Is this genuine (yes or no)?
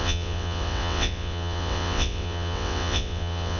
no